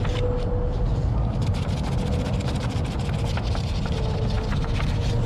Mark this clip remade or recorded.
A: recorded